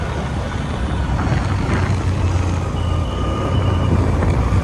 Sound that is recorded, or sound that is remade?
recorded